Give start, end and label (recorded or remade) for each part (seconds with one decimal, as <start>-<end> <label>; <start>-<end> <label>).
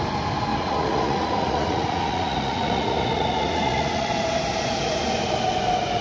0.0-0.5 recorded; 0.5-4.1 remade; 4.1-6.0 recorded